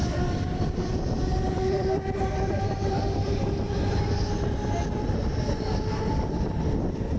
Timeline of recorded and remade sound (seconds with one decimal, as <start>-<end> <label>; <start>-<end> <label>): 0.0-3.9 remade; 3.9-7.2 recorded